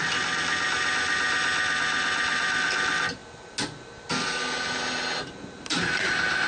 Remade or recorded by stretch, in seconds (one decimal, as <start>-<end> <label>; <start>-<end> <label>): 0.0-6.5 recorded